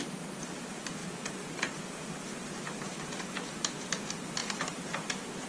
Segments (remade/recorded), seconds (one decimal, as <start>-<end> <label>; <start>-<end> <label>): 0.0-5.5 recorded